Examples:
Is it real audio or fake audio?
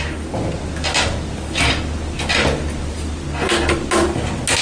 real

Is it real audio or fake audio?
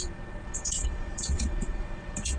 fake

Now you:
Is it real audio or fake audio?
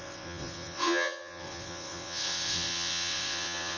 fake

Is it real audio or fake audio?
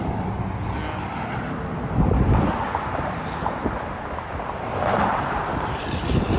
real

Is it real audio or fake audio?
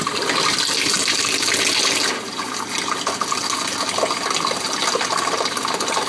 real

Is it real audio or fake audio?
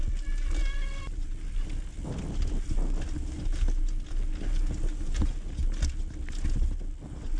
real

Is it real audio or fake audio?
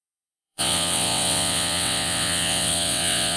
fake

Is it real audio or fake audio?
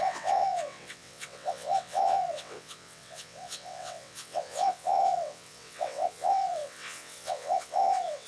fake